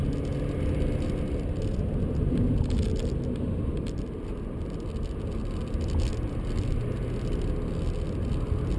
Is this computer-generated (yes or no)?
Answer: no